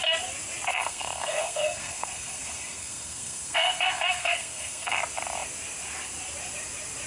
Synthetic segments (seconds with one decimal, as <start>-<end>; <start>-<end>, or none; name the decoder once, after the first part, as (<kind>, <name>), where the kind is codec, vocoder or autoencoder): 0.7-5.0 (codec, SNAC)